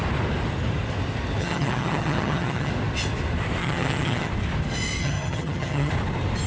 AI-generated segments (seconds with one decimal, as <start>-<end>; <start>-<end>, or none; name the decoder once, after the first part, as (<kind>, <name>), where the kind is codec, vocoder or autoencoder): 1.4-2.7 (vocoder, HiFi-GAN); 3.6-4.3; 5.0-5.9

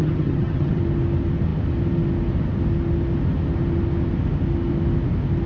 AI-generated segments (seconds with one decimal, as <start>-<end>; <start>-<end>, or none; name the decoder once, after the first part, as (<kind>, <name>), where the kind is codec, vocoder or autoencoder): 0.0-0.8 (vocoder, HiFi-GAN)

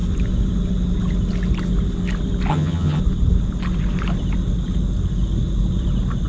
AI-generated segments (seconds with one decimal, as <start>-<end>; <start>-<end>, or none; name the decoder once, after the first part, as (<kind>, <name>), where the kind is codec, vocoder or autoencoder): 2.5-3.0 (vocoder, HiFi-GAN)

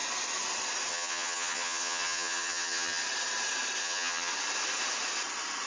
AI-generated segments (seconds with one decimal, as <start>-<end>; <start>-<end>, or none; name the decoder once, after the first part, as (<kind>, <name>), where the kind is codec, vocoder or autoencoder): 0.9-3.0 (vocoder, HiFi-GAN); 3.8-4.3

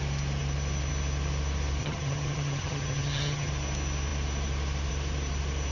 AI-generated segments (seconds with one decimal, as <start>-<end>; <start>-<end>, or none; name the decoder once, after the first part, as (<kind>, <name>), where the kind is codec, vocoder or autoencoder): 1.8-3.5 (vocoder, HiFi-GAN)

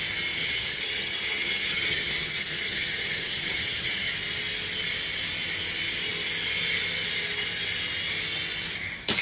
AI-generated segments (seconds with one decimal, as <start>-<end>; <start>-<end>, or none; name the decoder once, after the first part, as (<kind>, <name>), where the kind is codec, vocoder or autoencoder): 0.4-4.1 (vocoder, HiFi-GAN)